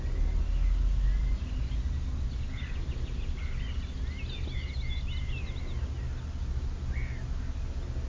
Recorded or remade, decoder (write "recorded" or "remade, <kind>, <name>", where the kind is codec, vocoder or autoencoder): recorded